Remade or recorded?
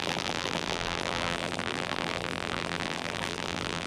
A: remade